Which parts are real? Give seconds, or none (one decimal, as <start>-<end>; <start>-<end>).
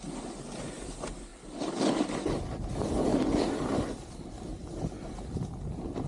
0.0-1.3; 2.4-3.1; 3.8-6.1